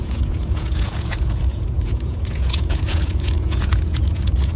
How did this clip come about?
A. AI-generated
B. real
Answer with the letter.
A